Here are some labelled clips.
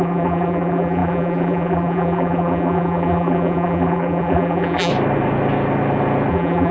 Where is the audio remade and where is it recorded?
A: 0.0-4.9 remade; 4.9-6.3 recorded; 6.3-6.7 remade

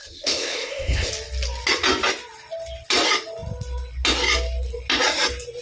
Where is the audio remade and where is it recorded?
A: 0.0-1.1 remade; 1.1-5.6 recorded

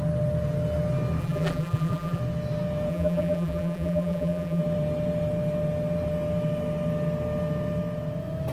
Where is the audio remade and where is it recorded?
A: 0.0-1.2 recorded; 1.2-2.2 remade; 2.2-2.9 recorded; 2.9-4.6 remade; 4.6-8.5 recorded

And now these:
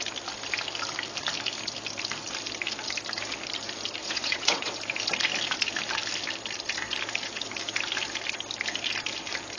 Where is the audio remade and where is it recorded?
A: 0.0-4.0 recorded; 4.0-4.8 remade; 4.8-9.6 recorded